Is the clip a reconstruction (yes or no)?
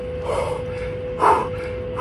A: no